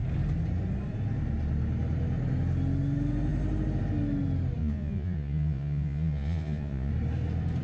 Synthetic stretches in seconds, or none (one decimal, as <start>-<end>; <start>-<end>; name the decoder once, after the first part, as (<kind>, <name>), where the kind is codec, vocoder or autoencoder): 4.6-6.9 (vocoder, Vocos)